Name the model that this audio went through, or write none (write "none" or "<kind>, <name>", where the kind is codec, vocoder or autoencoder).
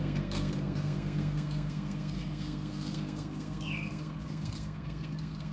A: codec, SNAC